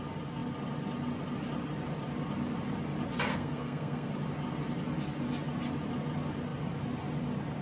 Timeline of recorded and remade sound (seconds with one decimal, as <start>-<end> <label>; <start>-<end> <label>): 0.0-3.3 recorded; 3.3-4.1 remade; 4.1-7.6 recorded